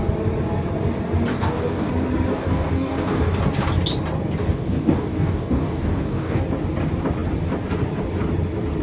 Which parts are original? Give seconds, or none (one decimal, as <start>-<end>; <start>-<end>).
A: 0.0-1.3; 1.9-2.3; 3.4-4.4; 6.4-8.8

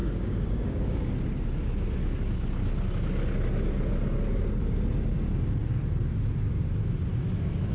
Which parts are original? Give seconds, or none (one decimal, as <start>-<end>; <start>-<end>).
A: 0.9-7.7

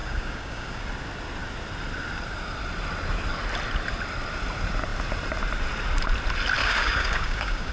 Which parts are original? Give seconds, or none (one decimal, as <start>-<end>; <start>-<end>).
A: 0.8-6.6

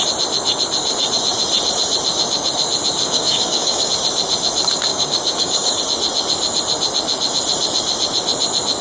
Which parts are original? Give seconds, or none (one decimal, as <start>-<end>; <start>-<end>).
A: 0.0-3.0; 3.9-4.9; 5.8-8.8

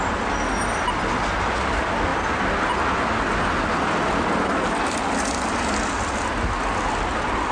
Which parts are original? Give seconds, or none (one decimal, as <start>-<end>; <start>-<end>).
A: 0.0-7.5